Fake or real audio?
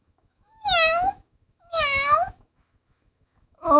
fake